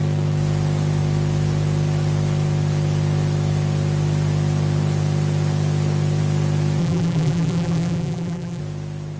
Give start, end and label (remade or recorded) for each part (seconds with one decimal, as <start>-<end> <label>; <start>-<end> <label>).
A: 0.0-6.8 recorded; 6.8-8.6 remade; 8.6-9.2 recorded